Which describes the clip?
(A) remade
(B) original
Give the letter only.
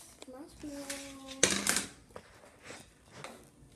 B